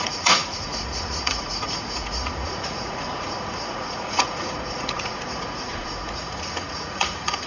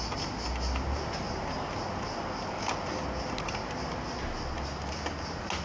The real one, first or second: second